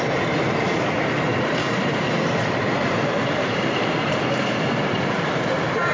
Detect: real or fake fake